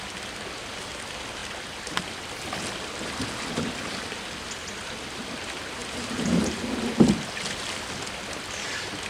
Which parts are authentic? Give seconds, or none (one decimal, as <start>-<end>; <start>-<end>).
0.0-5.8; 6.6-9.1